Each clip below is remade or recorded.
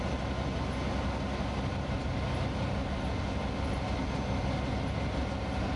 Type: recorded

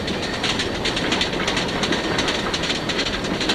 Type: recorded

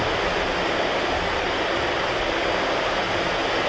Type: recorded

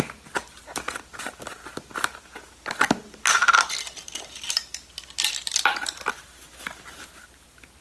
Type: recorded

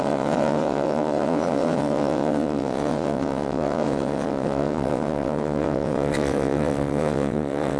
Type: remade